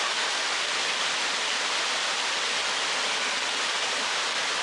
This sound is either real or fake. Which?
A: real